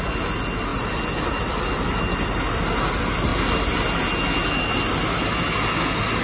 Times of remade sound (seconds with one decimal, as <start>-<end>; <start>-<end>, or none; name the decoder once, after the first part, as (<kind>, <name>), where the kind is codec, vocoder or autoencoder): none

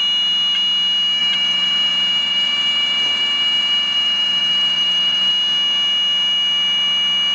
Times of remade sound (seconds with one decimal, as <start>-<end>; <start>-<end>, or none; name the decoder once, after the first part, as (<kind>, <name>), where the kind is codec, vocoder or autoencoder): 1.2-5.3 (vocoder, BigVGAN v2)

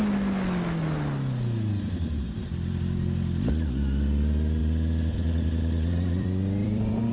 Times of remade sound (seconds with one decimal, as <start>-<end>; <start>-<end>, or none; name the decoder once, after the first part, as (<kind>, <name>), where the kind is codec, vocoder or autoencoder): 4.6-7.1 (vocoder, BigVGAN v2)

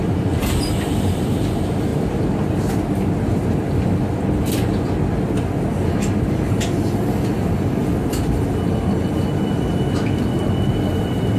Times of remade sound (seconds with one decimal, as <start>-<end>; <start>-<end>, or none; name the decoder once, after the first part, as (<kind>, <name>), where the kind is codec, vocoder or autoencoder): 0.0-1.9 (vocoder, BigVGAN v2); 6.1-7.8; 11.0-11.4